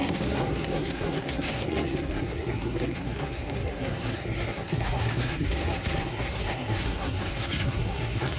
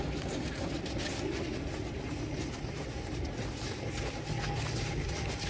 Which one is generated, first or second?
first